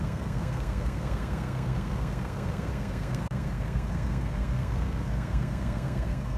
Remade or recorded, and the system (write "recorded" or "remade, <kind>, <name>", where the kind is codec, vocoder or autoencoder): remade, codec, SNAC